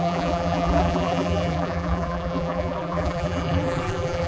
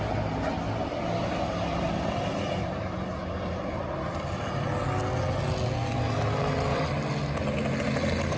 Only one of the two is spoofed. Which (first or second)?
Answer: first